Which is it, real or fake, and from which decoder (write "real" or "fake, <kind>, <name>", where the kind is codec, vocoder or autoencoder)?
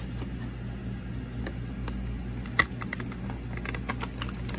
real